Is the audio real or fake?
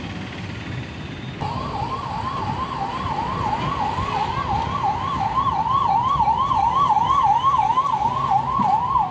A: real